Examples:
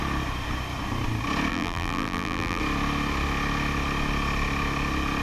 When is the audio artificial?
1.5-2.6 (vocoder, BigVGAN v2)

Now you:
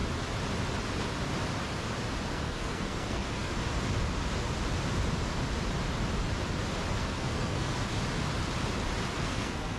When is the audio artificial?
2.3-3.5 (codec, SNAC); 6.9-7.9; 9.2-9.8

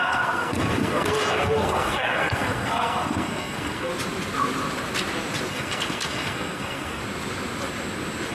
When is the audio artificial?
0.0-3.9 (codec, SNAC); 5.5-7.0